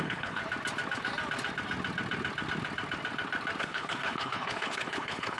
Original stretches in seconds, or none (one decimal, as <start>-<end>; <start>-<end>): 0.4-3.6